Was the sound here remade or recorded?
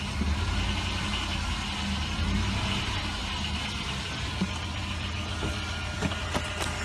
recorded